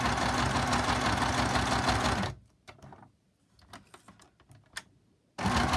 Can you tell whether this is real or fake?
real